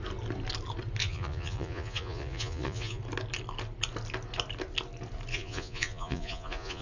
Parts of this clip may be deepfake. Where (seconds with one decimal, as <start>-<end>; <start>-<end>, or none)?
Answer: 1.0-3.0; 5.3-6.8